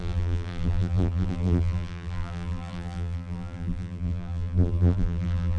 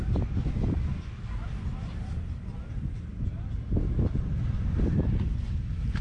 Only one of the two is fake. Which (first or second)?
first